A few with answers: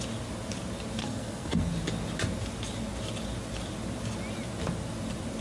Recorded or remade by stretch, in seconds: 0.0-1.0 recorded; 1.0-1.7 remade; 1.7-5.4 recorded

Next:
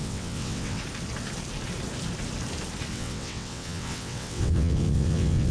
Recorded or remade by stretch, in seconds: 0.0-0.8 remade; 0.8-2.9 recorded; 2.9-5.5 remade